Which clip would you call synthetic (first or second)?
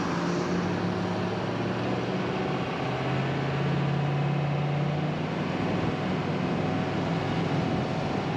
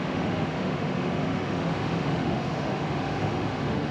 second